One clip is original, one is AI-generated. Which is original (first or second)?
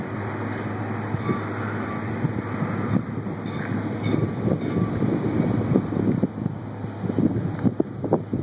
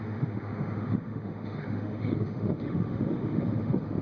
first